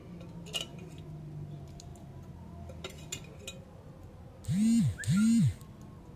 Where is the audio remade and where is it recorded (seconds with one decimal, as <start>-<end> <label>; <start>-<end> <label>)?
0.0-6.2 recorded